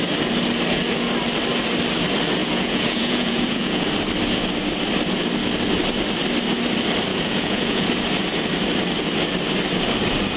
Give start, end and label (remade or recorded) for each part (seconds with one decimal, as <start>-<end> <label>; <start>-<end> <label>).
0.0-2.4 recorded; 2.4-3.9 remade; 3.9-7.1 recorded; 7.1-7.9 remade; 7.9-10.4 recorded